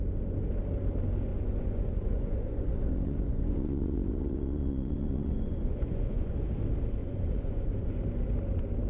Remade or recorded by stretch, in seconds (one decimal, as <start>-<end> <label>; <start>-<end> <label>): 0.0-1.3 recorded; 1.3-6.4 remade; 6.4-7.0 recorded; 7.0-7.7 remade; 7.7-8.9 recorded